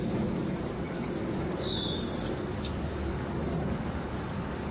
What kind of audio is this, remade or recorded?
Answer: remade